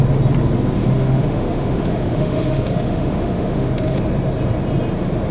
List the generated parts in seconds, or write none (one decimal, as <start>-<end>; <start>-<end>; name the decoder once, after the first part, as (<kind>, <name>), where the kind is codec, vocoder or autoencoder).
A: 0.8-4.0 (autoencoder, DAC-VAE)